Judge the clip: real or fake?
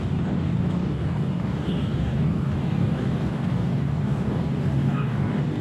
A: fake